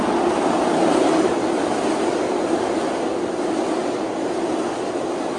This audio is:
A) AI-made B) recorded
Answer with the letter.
B